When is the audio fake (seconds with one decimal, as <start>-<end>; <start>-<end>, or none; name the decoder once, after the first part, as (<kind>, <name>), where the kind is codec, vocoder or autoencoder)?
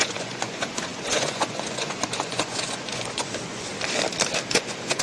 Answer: 0.0-3.7 (vocoder, Vocos); 4.5-5.0